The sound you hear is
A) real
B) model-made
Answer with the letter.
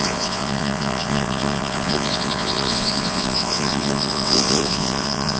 B